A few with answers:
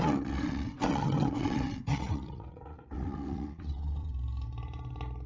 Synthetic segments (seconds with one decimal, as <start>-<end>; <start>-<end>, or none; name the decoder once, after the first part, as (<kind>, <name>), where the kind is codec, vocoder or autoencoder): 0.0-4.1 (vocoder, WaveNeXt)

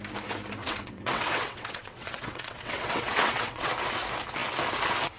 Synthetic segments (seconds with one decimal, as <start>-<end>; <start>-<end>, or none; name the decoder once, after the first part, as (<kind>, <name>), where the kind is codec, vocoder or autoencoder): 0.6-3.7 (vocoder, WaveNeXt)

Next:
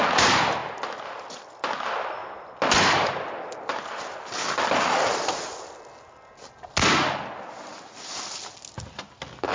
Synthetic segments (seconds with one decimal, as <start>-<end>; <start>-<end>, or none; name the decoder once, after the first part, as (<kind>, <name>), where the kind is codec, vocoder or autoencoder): none

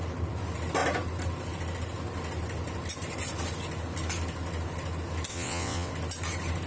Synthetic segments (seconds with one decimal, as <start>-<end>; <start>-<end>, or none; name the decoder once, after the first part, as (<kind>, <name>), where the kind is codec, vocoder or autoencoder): 5.3-5.9 (vocoder, WaveNeXt)

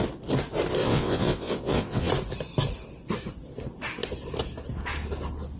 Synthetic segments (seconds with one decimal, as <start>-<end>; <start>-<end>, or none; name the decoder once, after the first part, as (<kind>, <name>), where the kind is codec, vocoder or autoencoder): 0.8-2.1 (vocoder, WaveNeXt)

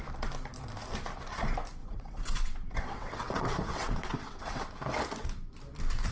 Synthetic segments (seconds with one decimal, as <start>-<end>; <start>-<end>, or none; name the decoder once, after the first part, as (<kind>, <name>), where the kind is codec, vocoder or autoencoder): 1.8-4.6 (vocoder, WaveNeXt)